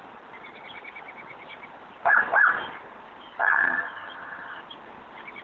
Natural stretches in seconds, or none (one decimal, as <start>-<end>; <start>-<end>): 0.0-3.4; 4.6-5.4